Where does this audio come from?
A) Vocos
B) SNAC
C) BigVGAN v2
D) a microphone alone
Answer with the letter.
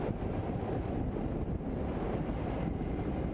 D